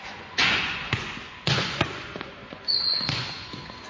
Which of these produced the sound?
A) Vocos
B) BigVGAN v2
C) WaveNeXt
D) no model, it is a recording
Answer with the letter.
A